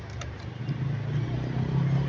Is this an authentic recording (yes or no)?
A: yes